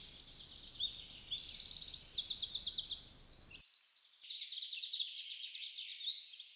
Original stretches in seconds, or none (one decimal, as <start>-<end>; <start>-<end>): 0.0-6.6